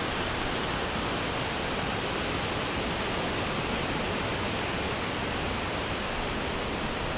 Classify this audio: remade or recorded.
recorded